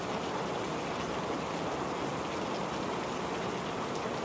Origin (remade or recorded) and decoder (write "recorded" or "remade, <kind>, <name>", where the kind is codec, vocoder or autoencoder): recorded